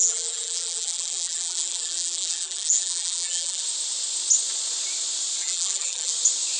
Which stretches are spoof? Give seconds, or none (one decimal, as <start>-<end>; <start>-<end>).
0.0-3.6; 5.4-6.1